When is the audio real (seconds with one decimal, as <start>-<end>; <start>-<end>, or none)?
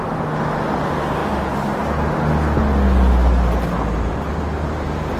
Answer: 0.0-5.2